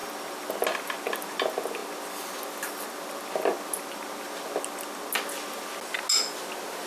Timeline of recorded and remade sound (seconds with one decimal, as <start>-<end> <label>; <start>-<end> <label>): 0.0-6.9 recorded